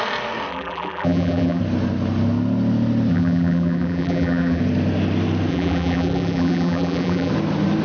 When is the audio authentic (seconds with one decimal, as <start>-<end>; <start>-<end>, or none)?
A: 0.0-0.5; 1.6-3.1; 4.6-5.5; 7.3-7.8